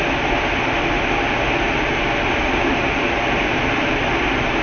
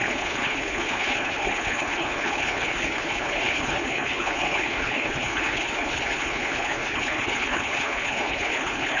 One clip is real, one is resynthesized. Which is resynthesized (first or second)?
second